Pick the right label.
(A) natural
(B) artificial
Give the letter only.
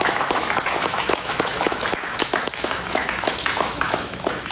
B